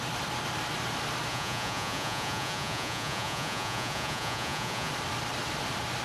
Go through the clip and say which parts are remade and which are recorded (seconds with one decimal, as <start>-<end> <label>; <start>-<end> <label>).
0.0-1.3 recorded; 1.3-4.9 remade; 4.9-6.0 recorded